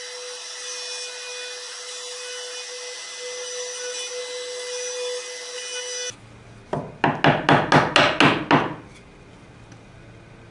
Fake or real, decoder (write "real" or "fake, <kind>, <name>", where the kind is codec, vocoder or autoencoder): real